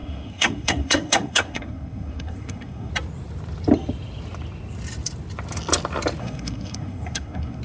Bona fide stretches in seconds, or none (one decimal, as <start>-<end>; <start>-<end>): 2.9-6.2